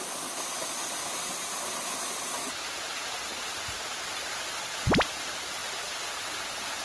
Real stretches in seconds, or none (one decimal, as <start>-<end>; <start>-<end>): 0.0-6.8